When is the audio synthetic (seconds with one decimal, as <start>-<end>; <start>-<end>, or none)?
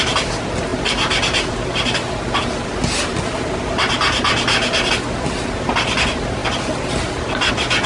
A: none